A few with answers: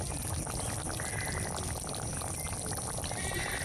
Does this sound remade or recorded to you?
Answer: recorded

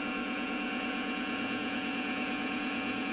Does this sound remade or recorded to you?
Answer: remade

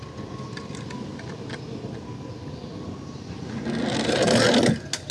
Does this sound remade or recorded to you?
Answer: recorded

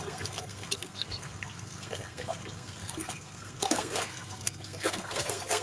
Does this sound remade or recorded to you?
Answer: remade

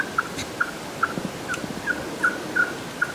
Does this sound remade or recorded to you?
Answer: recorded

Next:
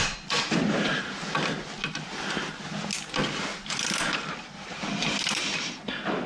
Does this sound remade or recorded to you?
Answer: recorded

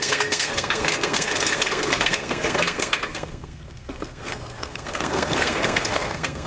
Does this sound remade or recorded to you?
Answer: remade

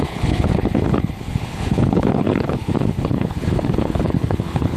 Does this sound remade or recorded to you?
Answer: remade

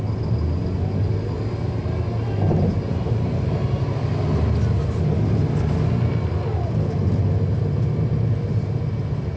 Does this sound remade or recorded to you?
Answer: recorded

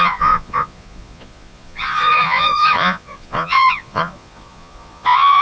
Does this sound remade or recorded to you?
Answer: remade